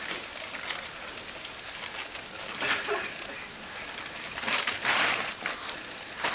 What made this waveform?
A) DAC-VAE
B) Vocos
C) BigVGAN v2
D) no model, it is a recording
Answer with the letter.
D